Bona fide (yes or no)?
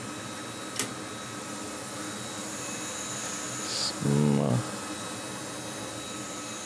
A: yes